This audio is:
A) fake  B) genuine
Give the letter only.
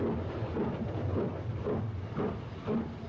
B